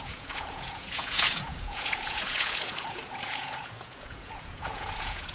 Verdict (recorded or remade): remade